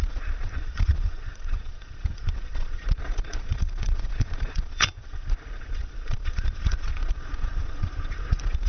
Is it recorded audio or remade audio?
remade